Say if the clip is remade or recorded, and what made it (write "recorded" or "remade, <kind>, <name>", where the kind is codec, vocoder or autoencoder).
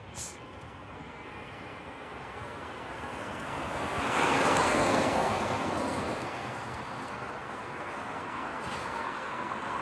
remade, codec, SNAC